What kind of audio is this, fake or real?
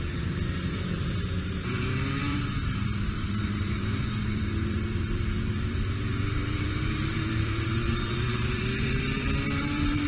fake